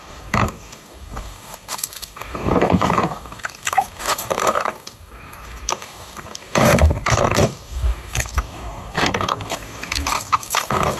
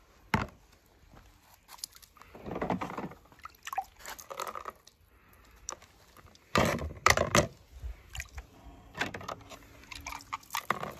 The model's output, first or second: first